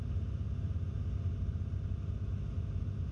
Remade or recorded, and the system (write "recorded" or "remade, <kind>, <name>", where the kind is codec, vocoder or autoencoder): recorded